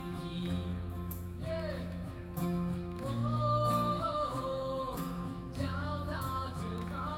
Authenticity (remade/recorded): remade